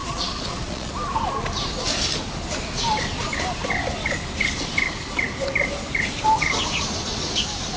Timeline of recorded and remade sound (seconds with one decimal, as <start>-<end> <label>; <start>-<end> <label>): 0.0-0.9 remade; 0.9-7.8 recorded